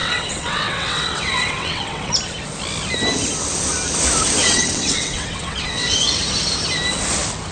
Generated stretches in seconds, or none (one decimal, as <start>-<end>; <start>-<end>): 0.0-2.1; 4.4-6.2